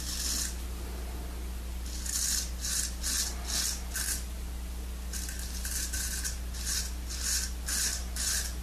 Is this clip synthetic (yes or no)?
no